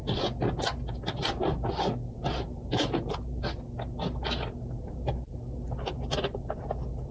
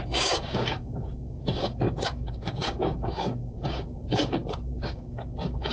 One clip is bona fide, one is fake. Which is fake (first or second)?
second